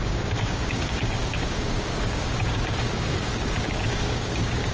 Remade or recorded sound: remade